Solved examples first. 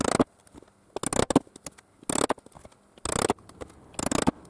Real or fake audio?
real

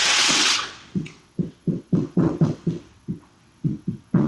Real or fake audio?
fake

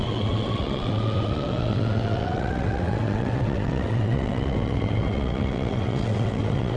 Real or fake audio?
fake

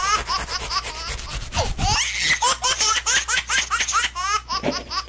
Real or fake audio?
real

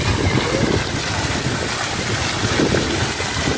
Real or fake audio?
real